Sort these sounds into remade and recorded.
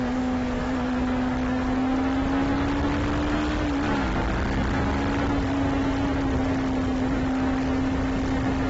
recorded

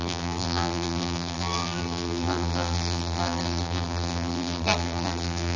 remade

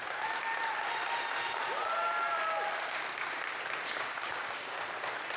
recorded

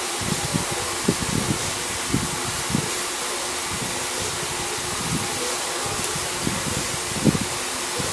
recorded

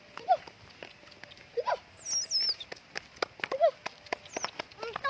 recorded